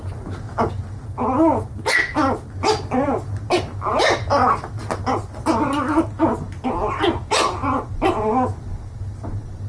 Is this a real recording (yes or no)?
yes